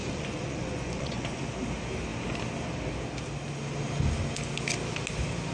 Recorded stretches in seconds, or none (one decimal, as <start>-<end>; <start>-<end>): 1.4-5.5

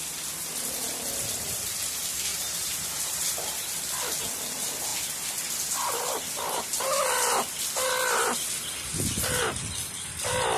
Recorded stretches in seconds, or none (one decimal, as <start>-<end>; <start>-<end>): 0.0-2.3; 3.2-10.6